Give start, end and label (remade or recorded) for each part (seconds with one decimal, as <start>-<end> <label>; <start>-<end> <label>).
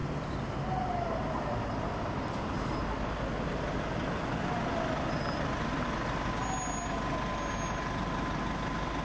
0.0-9.0 recorded